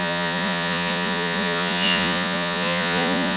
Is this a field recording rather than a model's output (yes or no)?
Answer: no